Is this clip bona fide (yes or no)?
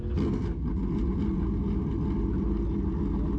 yes